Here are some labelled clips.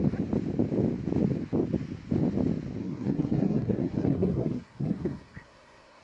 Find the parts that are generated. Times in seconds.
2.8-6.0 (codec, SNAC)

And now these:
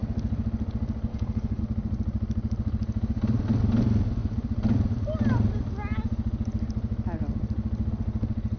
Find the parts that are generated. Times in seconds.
1.1-1.6 (codec, HILCodec)

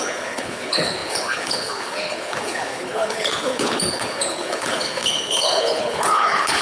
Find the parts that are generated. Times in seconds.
0.0-6.6 (codec, HILCodec)